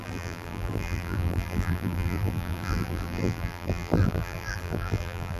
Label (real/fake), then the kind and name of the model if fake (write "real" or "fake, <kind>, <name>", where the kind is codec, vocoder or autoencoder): fake, vocoder, BigVGAN v2